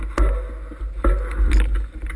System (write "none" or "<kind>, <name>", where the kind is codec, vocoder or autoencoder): none